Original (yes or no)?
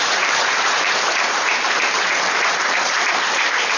no